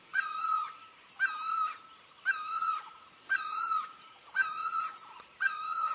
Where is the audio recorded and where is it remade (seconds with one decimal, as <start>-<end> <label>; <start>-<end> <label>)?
0.0-0.8 remade; 0.8-2.5 recorded; 2.5-5.9 remade